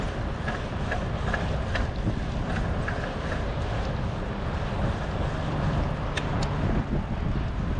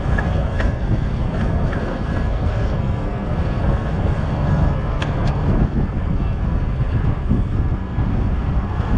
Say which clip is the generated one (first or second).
second